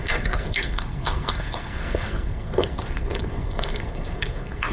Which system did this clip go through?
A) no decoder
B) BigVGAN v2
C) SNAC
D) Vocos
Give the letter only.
C